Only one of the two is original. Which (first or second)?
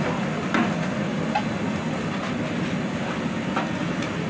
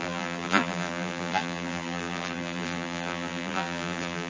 first